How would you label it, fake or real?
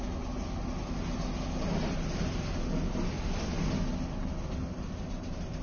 real